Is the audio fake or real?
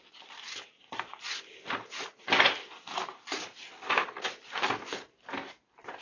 real